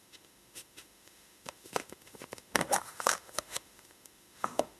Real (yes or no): no